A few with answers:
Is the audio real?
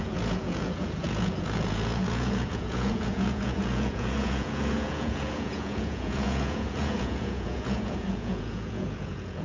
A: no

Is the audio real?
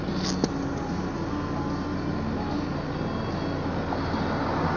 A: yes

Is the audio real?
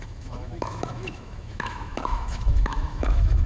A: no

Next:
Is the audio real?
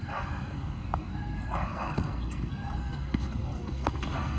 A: no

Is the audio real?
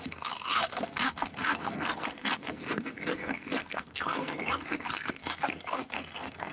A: no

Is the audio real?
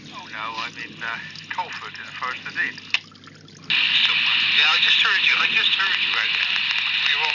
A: yes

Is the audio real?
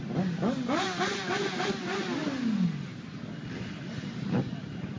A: yes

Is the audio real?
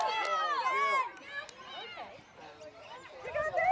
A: yes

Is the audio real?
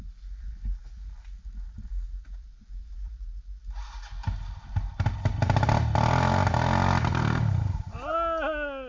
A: yes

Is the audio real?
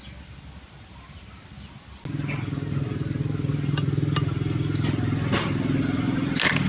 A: yes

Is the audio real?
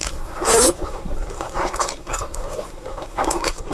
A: no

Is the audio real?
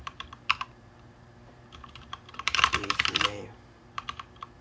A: no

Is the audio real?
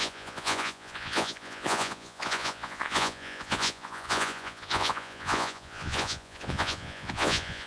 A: no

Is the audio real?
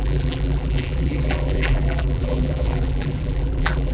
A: no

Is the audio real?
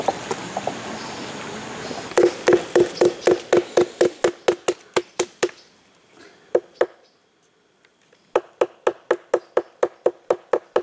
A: yes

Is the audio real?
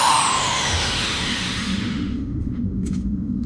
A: no